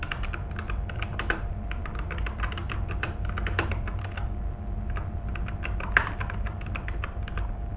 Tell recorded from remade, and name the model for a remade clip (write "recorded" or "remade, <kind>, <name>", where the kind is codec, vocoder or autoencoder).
remade, vocoder, BigVGAN v2